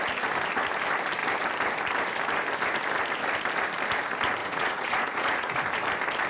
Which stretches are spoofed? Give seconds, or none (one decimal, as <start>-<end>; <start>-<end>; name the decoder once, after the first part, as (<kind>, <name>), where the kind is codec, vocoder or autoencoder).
4.4-5.6 (vocoder, Vocos)